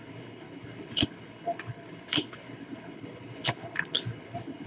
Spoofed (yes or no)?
yes